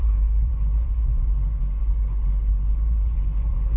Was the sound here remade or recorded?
remade